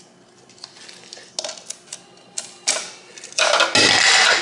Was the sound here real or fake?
real